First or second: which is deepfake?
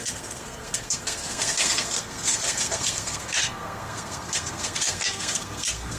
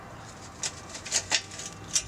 first